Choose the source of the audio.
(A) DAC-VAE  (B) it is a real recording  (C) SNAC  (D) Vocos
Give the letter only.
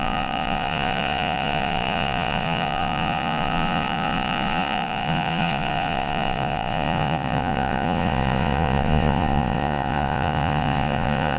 D